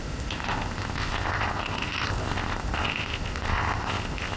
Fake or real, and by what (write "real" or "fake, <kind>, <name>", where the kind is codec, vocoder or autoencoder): fake, codec, ZipCodec